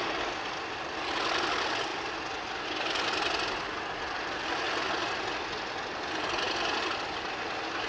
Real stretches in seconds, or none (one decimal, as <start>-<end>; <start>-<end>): 0.0-7.9